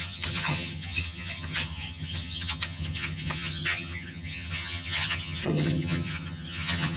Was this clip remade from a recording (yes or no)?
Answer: yes